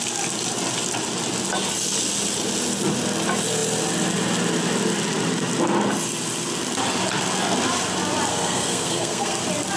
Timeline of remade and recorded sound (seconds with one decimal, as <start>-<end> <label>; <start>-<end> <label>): 0.0-8.3 recorded; 8.3-9.4 remade; 9.4-9.8 recorded